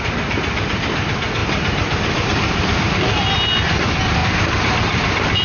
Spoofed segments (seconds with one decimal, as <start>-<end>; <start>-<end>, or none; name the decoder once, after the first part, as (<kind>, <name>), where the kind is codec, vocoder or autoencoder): 4.2-5.4 (vocoder, BigVGAN v2)